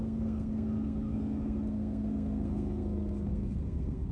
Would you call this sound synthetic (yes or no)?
yes